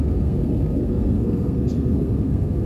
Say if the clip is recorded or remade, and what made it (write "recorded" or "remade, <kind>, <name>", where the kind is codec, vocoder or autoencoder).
remade, codec, SNAC